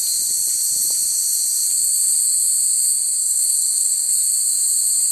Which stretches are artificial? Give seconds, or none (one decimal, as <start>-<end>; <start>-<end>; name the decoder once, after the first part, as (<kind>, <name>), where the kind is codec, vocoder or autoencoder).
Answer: 3.2-4.1 (codec, SNAC)

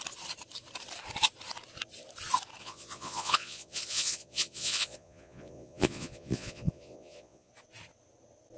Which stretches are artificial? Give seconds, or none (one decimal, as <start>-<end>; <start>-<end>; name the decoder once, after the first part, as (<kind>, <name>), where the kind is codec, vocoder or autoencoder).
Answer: 2.6-7.5 (vocoder, Vocos)

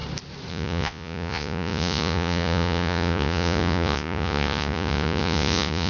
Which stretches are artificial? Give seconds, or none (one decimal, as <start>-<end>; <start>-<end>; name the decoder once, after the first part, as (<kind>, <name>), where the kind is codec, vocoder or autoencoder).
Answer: 0.5-5.9 (vocoder, Vocos)

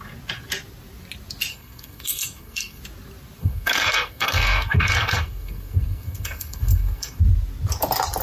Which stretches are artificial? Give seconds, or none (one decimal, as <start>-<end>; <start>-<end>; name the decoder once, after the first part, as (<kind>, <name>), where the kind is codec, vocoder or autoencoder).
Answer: 1.5-2.8 (codec, SNAC); 3.4-7.2

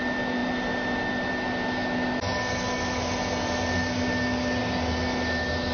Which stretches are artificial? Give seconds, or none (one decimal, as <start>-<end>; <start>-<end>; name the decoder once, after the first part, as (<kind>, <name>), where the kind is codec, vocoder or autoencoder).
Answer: none

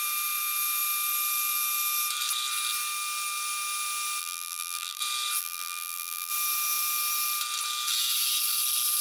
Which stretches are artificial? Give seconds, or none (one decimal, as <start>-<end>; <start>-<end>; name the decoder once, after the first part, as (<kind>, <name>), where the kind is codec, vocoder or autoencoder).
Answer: 4.2-5.0 (vocoder, BigVGAN v2); 5.4-6.3

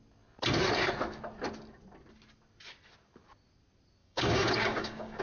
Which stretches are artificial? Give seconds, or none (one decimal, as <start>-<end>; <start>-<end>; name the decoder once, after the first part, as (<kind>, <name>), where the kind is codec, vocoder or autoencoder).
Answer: 4.0-5.2 (codec, DAC)